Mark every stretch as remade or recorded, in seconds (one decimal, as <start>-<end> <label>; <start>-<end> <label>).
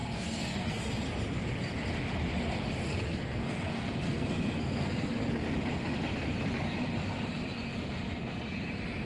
0.0-0.8 remade; 0.8-2.9 recorded; 2.9-5.3 remade; 5.3-9.1 recorded